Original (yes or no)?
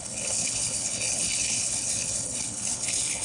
no